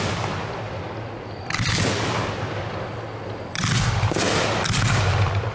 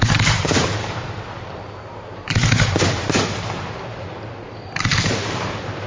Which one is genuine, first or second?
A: first